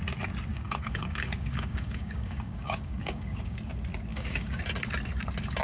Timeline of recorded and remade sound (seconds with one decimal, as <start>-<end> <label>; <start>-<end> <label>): 0.0-0.5 recorded; 0.5-3.6 remade; 3.6-4.1 recorded; 4.1-4.6 remade; 4.6-5.6 recorded